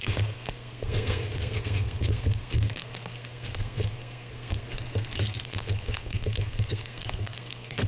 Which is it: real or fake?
fake